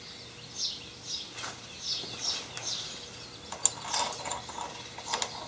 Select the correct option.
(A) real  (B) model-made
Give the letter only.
A